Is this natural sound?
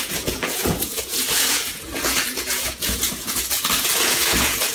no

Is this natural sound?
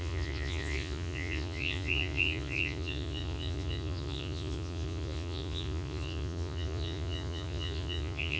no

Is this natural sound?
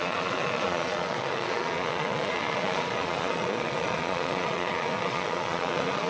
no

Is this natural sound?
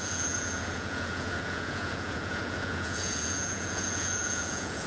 no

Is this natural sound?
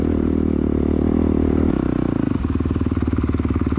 yes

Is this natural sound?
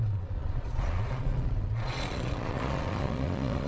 no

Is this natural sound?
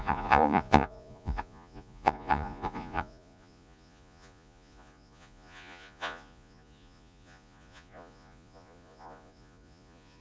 no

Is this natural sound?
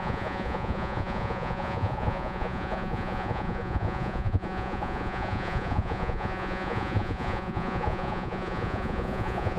no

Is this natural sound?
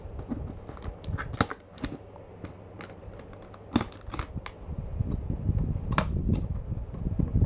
yes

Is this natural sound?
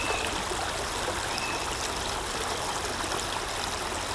yes